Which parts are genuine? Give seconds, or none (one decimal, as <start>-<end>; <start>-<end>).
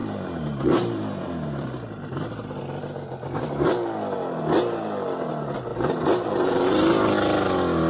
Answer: 2.6-5.7; 7.1-7.9